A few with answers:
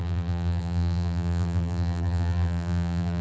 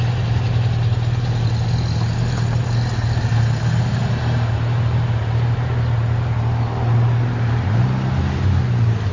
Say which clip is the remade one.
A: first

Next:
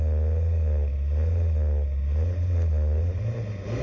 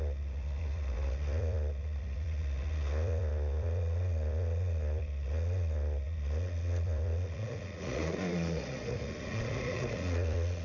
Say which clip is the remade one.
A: second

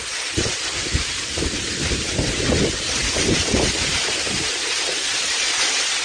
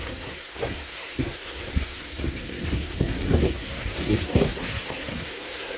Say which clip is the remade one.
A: second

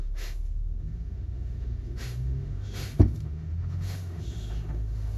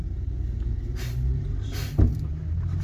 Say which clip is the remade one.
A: first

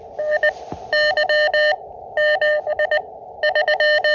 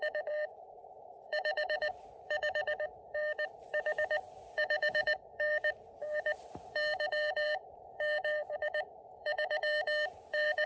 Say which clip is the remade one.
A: second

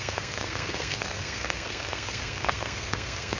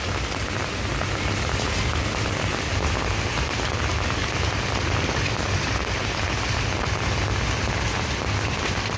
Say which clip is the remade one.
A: first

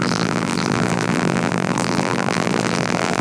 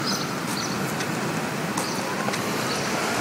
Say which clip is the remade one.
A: first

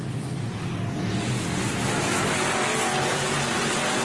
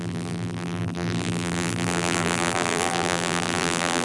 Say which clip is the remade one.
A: second